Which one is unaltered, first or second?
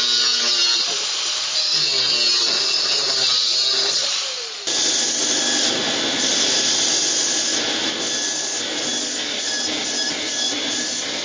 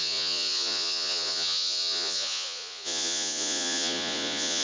first